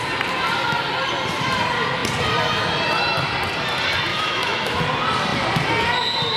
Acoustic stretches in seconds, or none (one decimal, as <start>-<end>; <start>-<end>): 0.0-4.1; 4.8-6.4